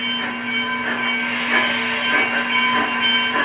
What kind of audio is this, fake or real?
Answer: real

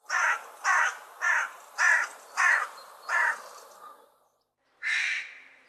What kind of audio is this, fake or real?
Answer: fake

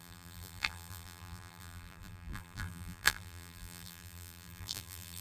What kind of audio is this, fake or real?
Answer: fake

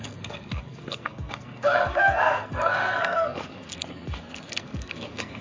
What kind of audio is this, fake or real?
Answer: fake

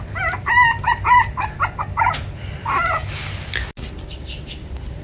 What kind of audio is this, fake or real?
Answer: real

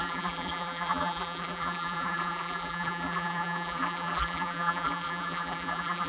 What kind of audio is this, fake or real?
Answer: fake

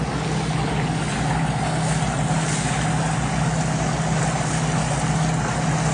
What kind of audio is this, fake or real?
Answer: real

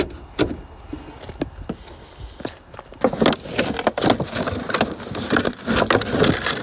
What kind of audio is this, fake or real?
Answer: real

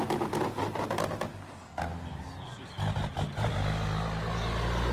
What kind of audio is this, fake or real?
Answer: real